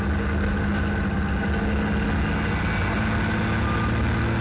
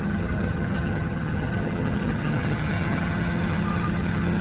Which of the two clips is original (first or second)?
first